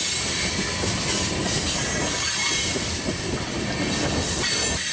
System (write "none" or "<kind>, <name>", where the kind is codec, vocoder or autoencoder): none